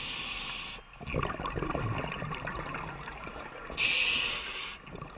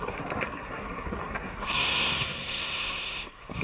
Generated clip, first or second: second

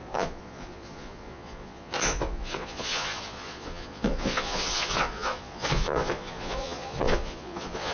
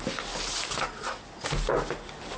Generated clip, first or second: first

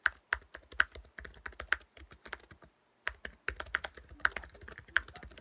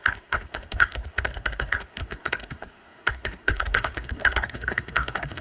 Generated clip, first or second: second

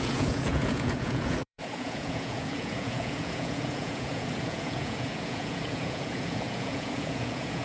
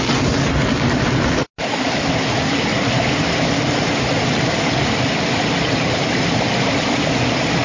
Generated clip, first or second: first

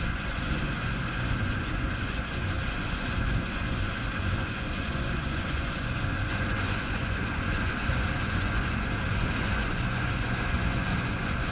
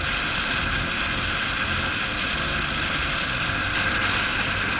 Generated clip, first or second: first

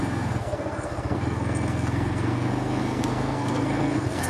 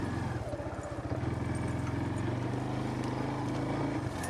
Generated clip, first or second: first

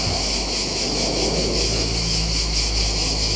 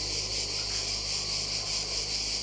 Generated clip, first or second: first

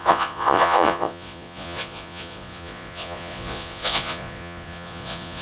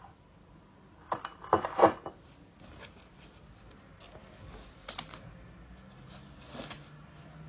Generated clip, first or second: first